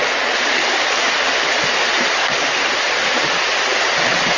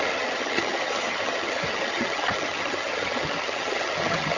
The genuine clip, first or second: first